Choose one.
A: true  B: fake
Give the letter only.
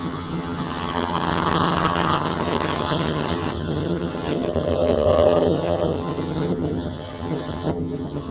B